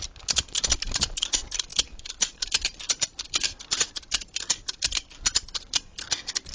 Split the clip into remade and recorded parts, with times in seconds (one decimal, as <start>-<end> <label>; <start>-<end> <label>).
0.0-1.7 recorded; 1.7-2.5 remade; 2.5-6.5 recorded